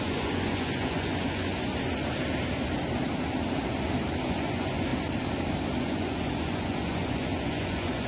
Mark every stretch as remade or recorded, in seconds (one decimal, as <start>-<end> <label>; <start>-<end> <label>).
0.0-1.7 remade; 1.7-4.2 recorded; 4.2-4.9 remade; 4.9-5.8 recorded; 5.8-8.1 remade